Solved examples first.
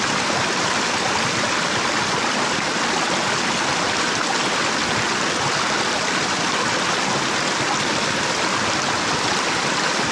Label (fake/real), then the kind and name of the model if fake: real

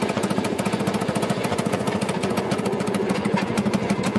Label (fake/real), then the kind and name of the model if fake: fake, vocoder, Vocos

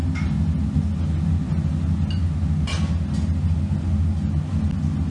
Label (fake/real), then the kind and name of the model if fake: real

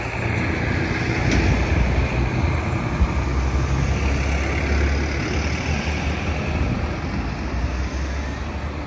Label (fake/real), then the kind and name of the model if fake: real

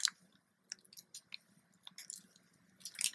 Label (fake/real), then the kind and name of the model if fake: real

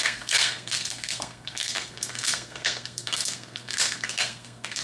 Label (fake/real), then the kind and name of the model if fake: fake, codec, SNAC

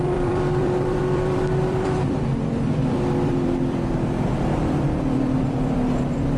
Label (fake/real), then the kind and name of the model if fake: fake, vocoder, BigVGAN v2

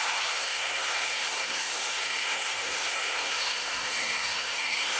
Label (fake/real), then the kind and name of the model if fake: fake, codec, SNAC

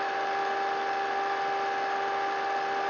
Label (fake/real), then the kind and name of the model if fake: real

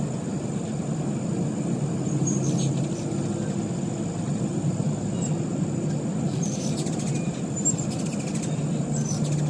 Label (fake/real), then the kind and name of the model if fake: real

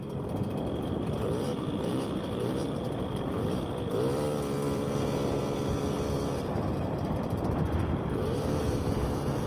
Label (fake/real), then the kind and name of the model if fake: fake, vocoder, BigVGAN v2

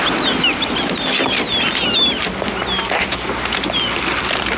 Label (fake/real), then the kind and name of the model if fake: real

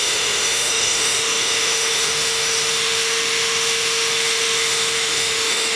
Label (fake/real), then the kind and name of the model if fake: fake, autoencoder, DAC-VAE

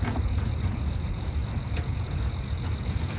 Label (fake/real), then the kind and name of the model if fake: fake, vocoder, Vocos